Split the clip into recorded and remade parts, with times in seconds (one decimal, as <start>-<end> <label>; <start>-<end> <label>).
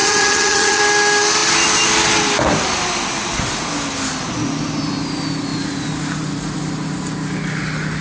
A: 0.0-0.8 remade; 0.8-8.0 recorded